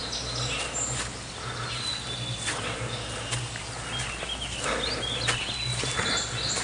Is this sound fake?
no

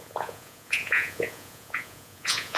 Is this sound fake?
yes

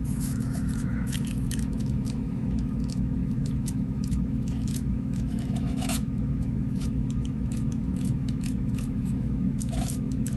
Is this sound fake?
yes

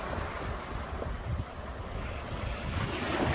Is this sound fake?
no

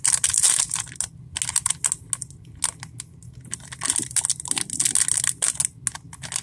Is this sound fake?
no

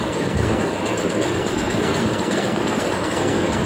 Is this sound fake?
yes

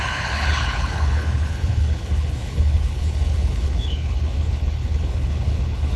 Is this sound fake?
yes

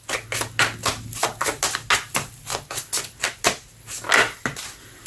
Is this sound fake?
no